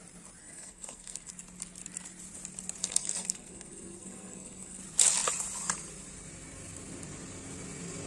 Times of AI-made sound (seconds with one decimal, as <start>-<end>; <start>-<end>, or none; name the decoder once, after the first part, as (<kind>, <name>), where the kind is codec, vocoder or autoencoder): 0.4-1.3 (codec, SNAC); 2.8-4.8

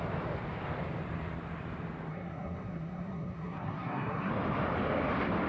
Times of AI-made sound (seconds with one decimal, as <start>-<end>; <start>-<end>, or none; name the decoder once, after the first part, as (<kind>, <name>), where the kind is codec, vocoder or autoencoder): 2.1-4.3 (codec, SNAC)

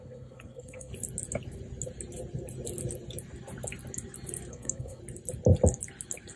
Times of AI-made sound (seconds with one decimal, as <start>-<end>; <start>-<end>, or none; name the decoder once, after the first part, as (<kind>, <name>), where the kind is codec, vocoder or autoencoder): 0.0-0.9 (codec, SNAC); 4.5-5.0

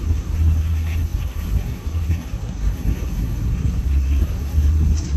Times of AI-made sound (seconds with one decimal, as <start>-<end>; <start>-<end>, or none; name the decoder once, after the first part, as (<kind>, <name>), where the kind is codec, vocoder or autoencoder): 0.0-5.2 (codec, SNAC)

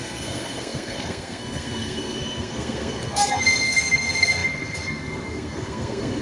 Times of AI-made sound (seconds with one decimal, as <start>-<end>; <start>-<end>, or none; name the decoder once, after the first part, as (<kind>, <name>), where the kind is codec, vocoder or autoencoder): 0.0-6.2 (codec, SNAC)

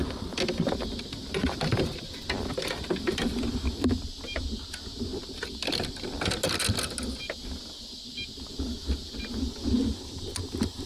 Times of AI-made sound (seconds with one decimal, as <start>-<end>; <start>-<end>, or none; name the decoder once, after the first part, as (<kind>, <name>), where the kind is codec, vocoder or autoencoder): none

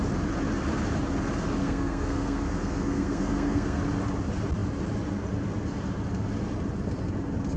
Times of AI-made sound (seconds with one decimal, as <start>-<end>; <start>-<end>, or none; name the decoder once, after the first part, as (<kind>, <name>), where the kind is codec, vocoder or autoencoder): 1.6-3.8 (codec, SNAC)